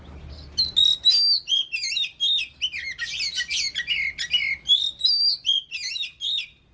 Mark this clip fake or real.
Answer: real